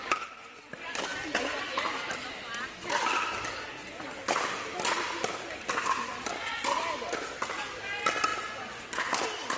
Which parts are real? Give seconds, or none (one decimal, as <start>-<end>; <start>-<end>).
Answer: 0.0-9.6